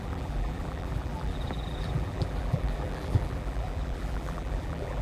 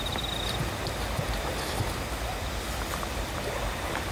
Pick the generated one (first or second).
first